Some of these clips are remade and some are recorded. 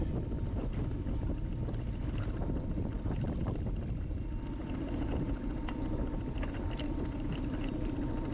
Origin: remade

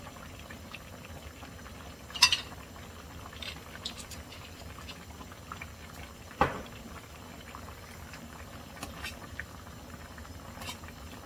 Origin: remade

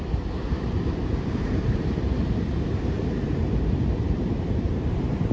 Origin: remade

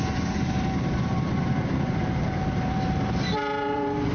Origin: remade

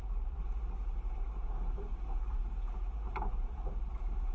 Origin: remade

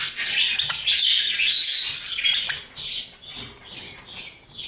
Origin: recorded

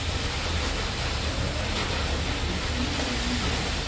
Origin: recorded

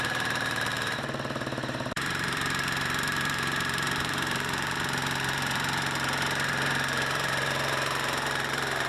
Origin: remade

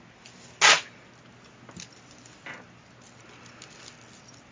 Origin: recorded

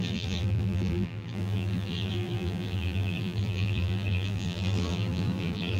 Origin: remade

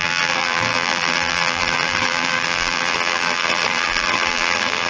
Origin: remade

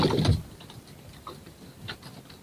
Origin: recorded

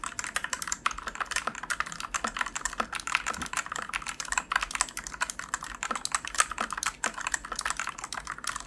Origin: recorded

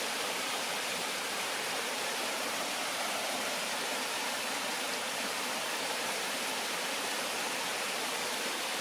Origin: remade